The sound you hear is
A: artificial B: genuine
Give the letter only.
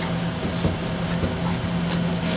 B